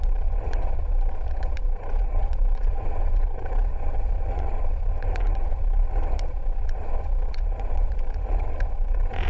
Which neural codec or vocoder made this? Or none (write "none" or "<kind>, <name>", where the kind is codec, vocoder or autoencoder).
vocoder, Vocos